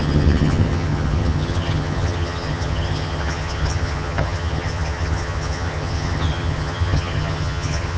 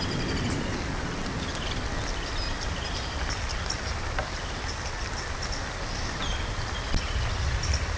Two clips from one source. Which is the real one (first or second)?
second